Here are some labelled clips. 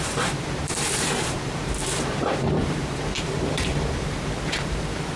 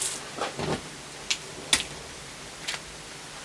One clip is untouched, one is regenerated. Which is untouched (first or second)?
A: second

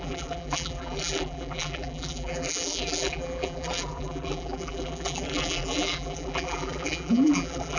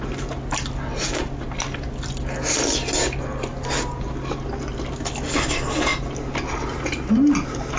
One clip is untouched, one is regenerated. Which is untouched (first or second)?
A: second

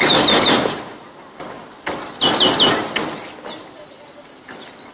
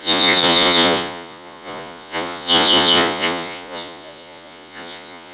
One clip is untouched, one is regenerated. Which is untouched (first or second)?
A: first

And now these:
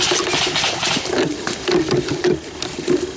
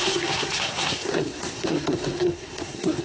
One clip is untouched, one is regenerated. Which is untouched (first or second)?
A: first